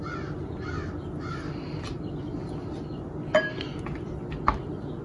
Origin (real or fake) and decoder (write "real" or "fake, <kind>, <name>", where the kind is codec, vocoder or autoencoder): real